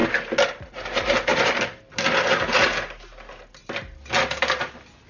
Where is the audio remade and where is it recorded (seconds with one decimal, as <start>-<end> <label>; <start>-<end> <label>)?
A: 0.0-5.1 recorded